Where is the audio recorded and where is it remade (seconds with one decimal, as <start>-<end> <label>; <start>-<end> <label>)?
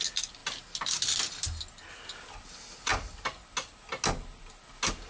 0.0-5.1 recorded